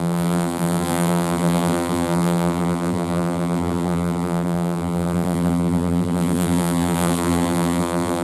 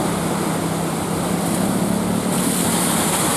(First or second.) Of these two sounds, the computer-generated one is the first